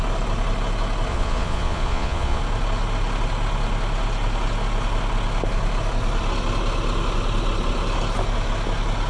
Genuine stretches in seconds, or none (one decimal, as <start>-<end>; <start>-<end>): 0.0-1.1; 2.4-9.1